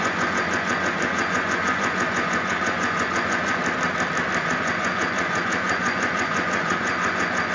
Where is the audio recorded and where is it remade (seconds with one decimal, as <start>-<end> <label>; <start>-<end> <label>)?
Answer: 0.0-3.6 remade; 3.6-4.4 recorded; 4.4-7.5 remade